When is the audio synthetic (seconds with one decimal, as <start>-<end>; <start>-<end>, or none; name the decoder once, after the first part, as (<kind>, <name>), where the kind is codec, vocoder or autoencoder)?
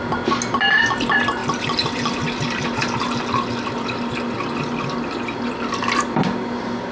none